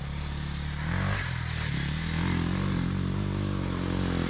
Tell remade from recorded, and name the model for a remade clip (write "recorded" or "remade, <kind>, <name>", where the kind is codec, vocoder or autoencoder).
recorded